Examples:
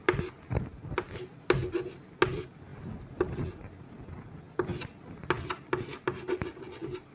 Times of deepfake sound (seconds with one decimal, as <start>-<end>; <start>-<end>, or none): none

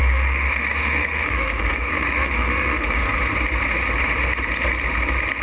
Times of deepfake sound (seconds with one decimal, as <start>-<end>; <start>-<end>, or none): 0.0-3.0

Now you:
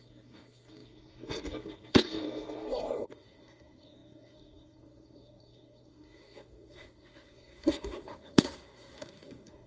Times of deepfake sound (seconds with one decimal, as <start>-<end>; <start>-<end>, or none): 0.0-9.7

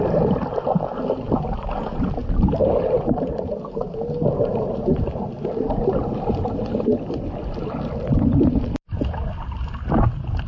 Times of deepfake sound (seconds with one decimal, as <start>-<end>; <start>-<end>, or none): 2.2-5.8

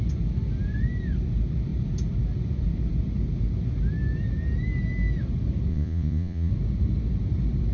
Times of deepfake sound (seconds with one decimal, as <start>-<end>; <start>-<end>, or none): 5.7-6.5

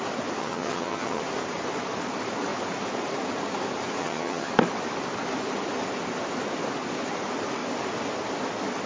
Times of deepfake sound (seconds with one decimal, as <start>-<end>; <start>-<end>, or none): 0.4-1.2; 4.0-4.5